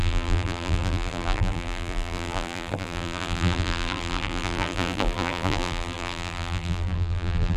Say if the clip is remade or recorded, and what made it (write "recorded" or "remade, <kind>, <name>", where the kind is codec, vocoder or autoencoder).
remade, vocoder, BigVGAN v2